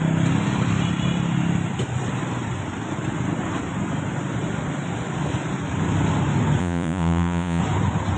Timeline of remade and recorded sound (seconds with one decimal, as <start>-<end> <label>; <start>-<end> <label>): 0.0-6.6 recorded; 6.6-7.6 remade; 7.6-8.2 recorded